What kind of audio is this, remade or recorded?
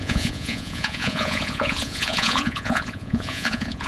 remade